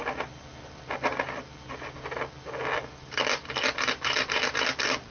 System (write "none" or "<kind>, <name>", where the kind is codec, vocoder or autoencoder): none